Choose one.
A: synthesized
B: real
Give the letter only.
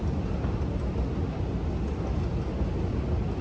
B